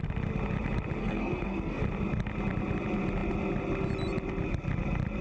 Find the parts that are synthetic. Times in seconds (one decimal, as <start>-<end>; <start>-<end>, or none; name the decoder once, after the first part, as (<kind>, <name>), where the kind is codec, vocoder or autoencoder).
1.0-1.8 (codec, SNAC)